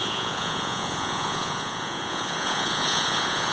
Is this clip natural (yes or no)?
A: no